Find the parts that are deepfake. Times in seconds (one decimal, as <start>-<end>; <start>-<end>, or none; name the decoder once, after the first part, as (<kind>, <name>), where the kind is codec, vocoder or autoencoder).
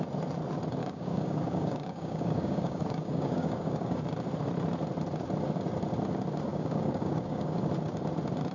0.8-4.0 (codec, DAC); 6.5-7.7